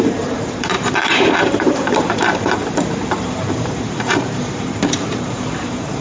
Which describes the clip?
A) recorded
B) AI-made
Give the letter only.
B